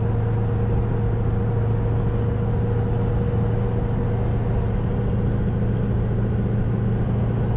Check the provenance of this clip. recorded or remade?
recorded